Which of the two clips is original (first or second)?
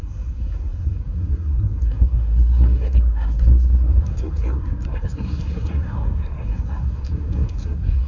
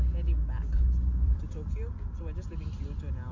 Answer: second